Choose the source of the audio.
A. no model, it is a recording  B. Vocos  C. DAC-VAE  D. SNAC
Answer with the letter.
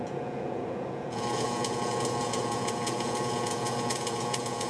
B